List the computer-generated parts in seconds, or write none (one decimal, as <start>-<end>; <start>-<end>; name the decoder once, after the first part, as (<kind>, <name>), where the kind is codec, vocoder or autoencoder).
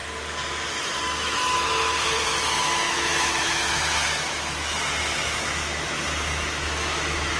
0.7-7.4 (autoencoder, DAC-VAE)